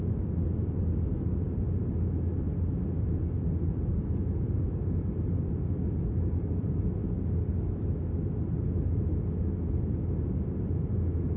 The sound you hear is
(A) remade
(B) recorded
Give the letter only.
B